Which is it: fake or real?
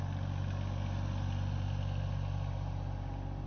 real